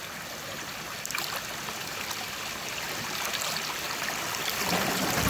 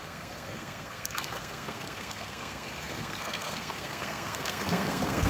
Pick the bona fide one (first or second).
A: first